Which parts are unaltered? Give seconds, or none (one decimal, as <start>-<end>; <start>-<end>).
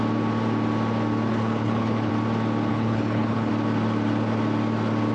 0.0-1.3; 2.1-2.7; 3.5-5.1